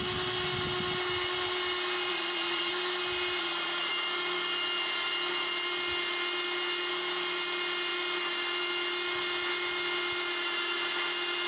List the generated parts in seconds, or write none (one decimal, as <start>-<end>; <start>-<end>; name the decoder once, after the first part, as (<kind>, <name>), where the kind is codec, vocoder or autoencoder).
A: 2.1-2.7 (vocoder, Vocos); 3.4-3.9